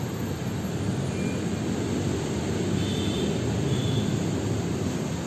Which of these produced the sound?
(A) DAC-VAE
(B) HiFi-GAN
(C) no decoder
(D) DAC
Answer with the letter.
C